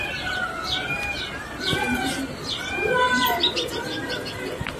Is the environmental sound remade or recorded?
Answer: recorded